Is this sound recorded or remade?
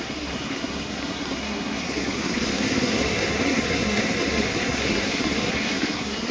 remade